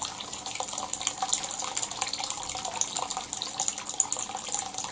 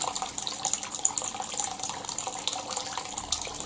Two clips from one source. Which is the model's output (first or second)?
second